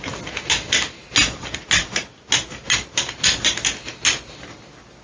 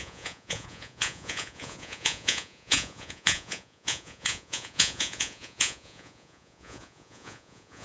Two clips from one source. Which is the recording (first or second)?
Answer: first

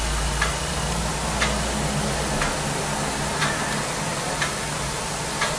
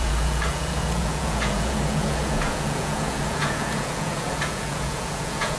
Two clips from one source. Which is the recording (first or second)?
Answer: first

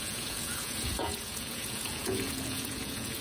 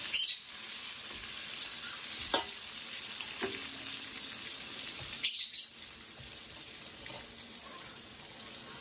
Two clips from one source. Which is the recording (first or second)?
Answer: second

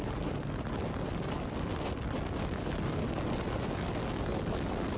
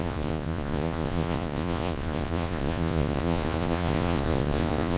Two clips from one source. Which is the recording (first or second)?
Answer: first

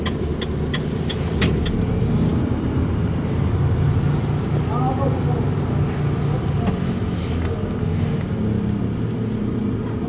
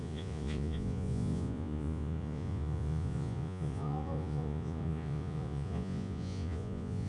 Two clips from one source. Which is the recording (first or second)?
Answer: first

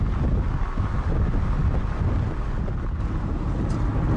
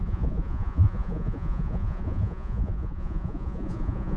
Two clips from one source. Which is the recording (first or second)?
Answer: first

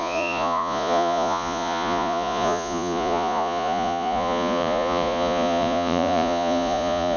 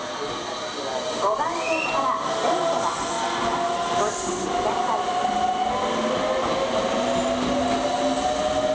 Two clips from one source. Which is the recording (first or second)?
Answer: second